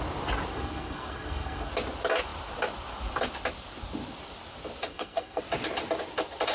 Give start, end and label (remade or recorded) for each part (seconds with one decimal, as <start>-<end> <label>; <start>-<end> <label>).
0.0-0.5 recorded; 0.5-1.7 remade; 1.7-4.9 recorded; 4.9-5.4 remade; 5.4-6.5 recorded